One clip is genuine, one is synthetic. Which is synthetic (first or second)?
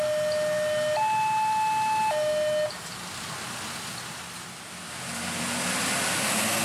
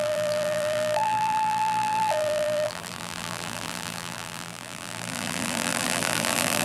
second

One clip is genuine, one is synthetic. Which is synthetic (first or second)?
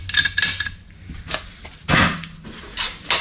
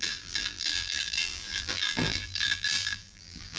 second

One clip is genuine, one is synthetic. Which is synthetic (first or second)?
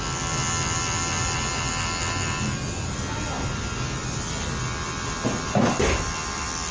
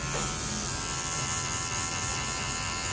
second